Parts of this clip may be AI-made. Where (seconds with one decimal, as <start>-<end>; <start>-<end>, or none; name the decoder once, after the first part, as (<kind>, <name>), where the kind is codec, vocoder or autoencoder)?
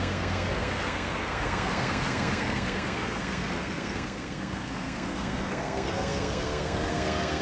0.0-7.4 (codec, SNAC)